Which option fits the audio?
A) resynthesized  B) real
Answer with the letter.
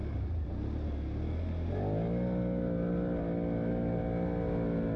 B